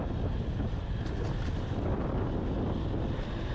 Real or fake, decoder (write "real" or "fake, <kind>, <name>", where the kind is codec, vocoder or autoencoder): real